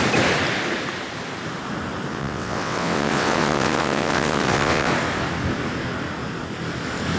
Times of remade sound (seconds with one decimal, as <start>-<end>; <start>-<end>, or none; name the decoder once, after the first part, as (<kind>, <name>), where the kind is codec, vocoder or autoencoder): 2.1-4.9 (vocoder, WaveNeXt)